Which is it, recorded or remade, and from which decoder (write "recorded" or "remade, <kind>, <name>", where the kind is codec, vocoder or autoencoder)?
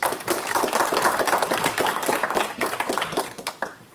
remade, codec, DAC